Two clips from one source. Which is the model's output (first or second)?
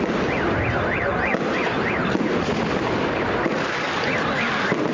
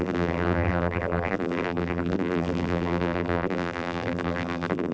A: second